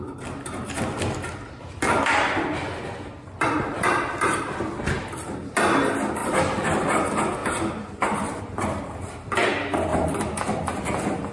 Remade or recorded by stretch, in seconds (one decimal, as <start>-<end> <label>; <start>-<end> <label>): 0.0-9.9 remade; 9.9-10.8 recorded; 10.8-11.3 remade